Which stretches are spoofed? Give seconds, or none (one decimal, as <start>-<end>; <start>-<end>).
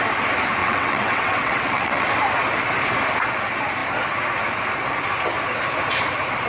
0.6-2.1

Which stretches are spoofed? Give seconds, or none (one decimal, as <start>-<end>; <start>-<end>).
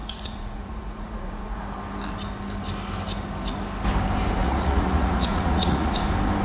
0.0-1.6; 4.4-6.0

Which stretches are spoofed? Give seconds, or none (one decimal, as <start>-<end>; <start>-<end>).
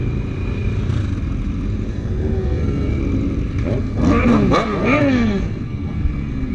1.9-3.0; 3.8-4.2; 4.8-6.5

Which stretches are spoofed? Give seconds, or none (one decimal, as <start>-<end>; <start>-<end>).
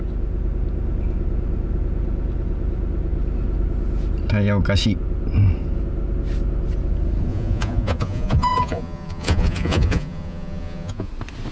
7.3-11.1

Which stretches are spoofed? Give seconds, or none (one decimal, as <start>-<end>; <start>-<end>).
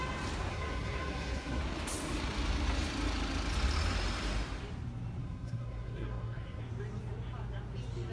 0.5-1.6; 5.2-6.6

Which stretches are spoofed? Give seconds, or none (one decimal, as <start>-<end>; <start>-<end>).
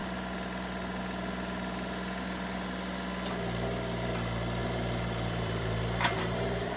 4.6-6.8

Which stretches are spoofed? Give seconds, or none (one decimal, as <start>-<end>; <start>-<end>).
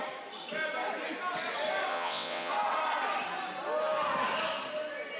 1.9-2.5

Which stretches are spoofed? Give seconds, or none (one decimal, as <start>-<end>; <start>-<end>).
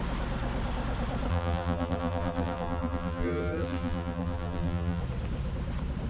1.3-5.0